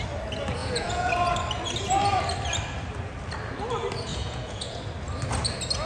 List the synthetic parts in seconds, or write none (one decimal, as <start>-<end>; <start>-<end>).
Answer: 0.6-1.1; 4.1-4.8